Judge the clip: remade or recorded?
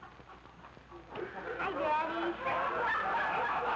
recorded